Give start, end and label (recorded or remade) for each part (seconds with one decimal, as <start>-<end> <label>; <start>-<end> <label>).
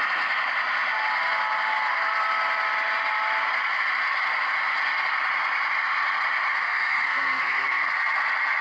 0.0-6.6 recorded; 6.6-7.9 remade; 7.9-8.6 recorded